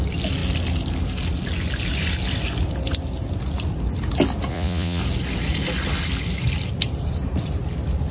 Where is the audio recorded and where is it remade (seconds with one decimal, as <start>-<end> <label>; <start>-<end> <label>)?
0.0-4.5 recorded; 4.5-5.0 remade; 5.0-8.1 recorded